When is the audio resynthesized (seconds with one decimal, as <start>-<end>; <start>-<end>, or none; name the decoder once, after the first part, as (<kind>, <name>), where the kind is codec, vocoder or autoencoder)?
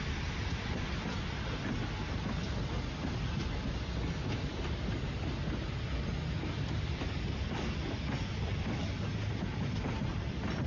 none